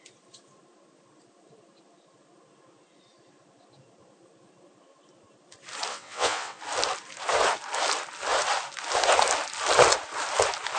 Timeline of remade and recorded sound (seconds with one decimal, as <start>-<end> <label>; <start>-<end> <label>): 0.0-5.9 recorded; 5.9-6.6 remade; 6.6-10.8 recorded